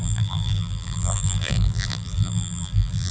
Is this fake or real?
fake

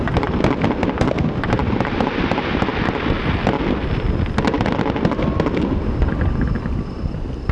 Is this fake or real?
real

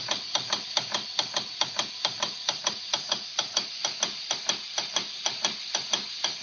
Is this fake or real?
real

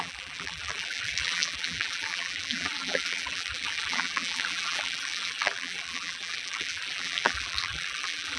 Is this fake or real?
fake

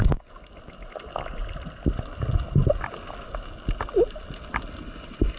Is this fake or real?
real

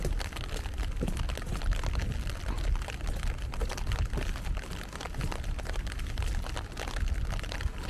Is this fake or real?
real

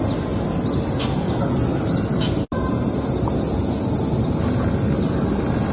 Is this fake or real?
real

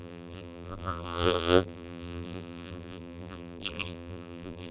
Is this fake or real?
fake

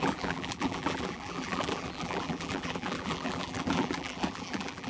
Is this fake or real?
fake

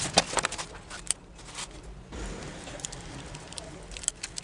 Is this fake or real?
real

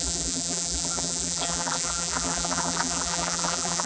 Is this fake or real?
fake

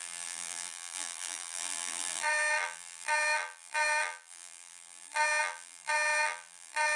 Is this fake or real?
fake